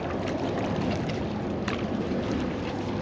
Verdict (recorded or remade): recorded